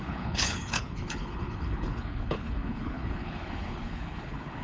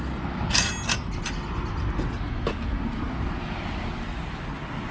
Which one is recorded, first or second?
second